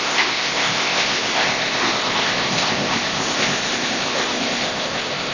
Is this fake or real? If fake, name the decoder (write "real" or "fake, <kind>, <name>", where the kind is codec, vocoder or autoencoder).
fake, codec, ZipCodec